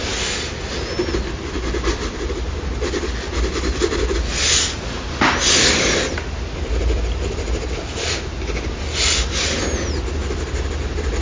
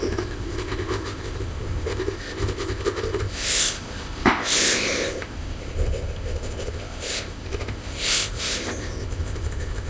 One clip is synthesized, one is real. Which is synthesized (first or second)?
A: second